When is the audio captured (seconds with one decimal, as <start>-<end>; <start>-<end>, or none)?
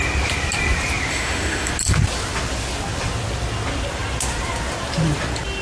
0.0-1.1; 1.7-5.6